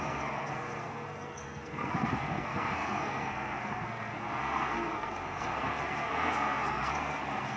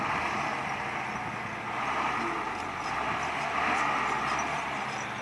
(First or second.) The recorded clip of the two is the second